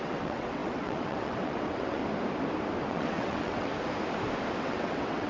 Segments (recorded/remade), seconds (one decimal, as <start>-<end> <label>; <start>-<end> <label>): 0.0-2.0 remade; 2.0-2.9 recorded; 2.9-3.7 remade; 3.7-4.6 recorded; 4.6-5.3 remade